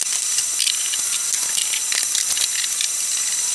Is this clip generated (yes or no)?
no